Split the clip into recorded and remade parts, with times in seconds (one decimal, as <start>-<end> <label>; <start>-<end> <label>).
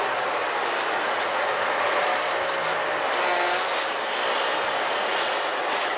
0.0-0.4 remade; 0.4-0.9 recorded; 0.9-2.1 remade; 2.1-4.9 recorded; 4.9-6.0 remade